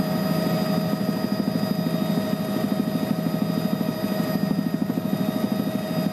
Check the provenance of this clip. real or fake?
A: real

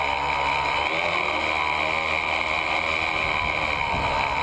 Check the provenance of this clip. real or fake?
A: real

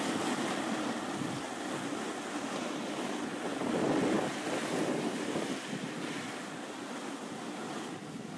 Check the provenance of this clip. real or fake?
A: real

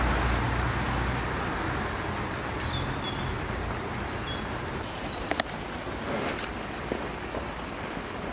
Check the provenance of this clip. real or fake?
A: real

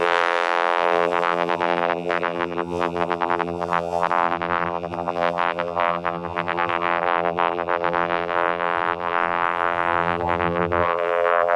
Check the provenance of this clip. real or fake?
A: fake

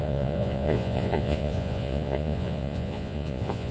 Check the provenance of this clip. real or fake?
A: fake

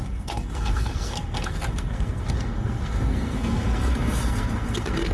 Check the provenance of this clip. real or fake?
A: fake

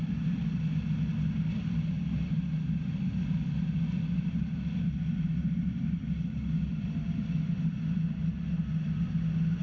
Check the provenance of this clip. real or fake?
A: real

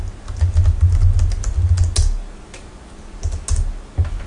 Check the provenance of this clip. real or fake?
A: real